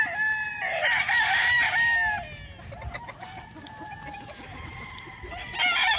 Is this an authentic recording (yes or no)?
yes